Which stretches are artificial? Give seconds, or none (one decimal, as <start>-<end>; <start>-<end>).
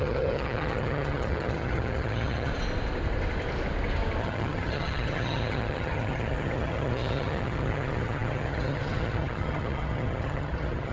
0.0-2.5; 4.2-10.9